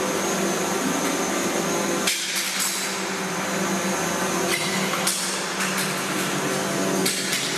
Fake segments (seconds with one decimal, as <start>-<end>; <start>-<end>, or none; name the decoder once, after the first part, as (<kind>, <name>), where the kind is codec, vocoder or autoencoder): none